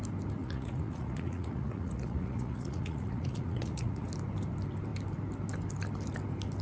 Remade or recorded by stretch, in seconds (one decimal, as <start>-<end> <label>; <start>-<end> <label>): 0.0-0.4 recorded; 0.4-4.1 remade; 4.1-6.6 recorded